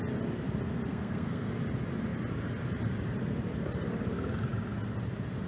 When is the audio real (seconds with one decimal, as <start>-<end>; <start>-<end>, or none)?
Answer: 0.0-0.9; 1.5-5.5